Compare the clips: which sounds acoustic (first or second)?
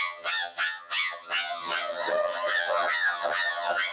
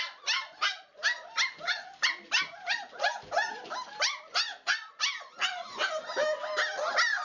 second